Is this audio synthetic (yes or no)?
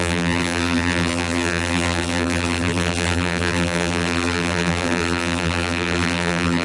yes